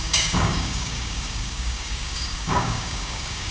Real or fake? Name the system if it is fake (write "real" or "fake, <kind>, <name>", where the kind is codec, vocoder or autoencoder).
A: fake, codec, DAC